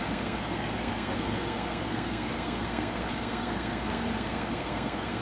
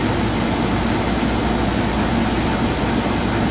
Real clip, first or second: second